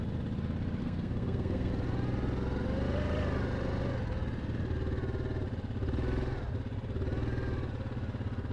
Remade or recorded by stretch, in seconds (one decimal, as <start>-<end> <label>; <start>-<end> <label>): 0.0-0.8 recorded; 0.8-1.7 remade; 1.7-8.5 recorded